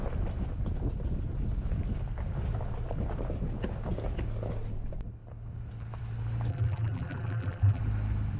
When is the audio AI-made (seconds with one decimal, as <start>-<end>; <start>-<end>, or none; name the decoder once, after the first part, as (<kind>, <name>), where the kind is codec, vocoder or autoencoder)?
6.5-7.8 (vocoder, BigVGAN v2)